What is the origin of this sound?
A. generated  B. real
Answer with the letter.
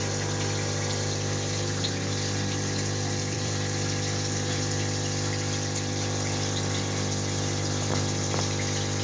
A